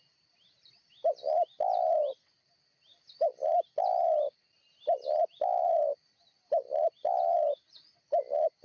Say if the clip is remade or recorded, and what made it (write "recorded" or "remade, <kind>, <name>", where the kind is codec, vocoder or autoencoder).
recorded